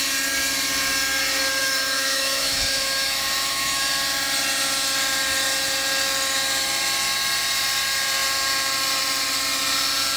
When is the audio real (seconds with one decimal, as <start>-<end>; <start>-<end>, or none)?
0.0-1.6; 3.8-10.2